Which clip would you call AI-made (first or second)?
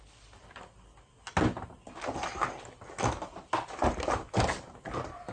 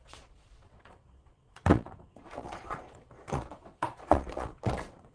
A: second